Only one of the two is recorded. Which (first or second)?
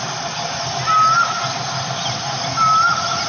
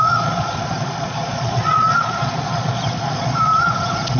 first